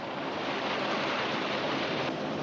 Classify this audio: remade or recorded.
recorded